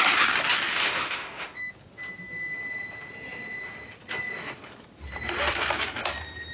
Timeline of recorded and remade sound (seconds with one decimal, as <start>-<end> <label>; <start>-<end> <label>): 0.0-0.7 recorded; 0.7-1.7 remade; 1.7-6.5 recorded

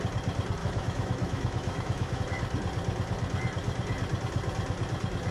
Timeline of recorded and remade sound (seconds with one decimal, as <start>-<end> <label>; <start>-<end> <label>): 0.0-0.6 recorded; 0.6-2.2 remade; 2.2-5.3 recorded

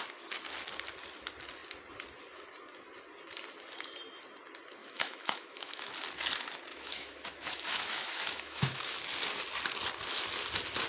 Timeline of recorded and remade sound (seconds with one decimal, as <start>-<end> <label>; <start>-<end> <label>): 0.0-4.8 recorded; 4.8-5.9 remade; 5.9-6.7 recorded; 6.7-9.0 remade; 9.0-10.9 recorded

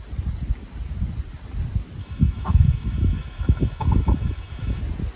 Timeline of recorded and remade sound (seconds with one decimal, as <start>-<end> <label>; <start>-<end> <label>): 0.0-2.0 recorded; 2.0-4.8 remade; 4.8-5.2 recorded

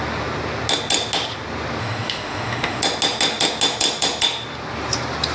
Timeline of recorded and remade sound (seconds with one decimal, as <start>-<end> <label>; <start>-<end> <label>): 0.0-1.8 recorded; 1.8-2.8 remade; 2.8-5.3 recorded

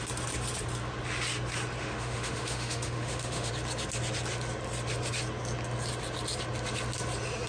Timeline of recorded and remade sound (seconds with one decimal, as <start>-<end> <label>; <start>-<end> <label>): 0.0-1.8 recorded; 1.8-3.5 remade; 3.5-7.5 recorded

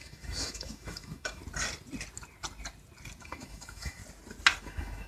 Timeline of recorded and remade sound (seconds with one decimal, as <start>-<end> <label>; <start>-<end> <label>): 0.0-1.4 remade; 1.4-3.2 recorded; 3.2-4.0 remade; 4.0-4.6 recorded; 4.6-5.1 remade

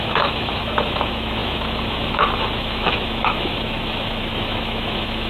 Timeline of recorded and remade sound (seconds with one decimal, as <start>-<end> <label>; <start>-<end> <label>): 0.0-5.3 remade